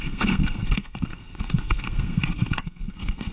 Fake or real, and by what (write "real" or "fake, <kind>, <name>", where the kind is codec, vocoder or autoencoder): fake, codec, SNAC